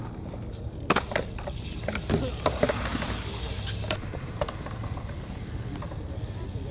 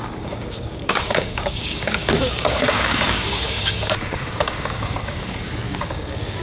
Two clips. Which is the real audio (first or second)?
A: first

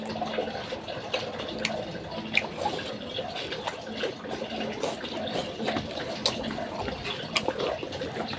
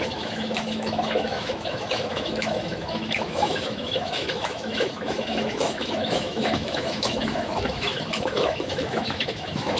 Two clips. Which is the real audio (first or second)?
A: first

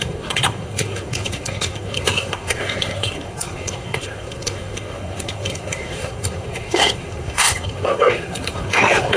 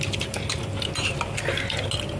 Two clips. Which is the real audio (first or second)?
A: second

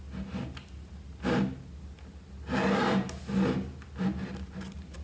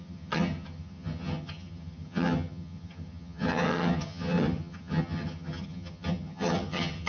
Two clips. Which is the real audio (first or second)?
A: first